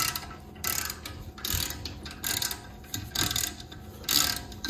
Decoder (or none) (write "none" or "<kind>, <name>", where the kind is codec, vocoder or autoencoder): none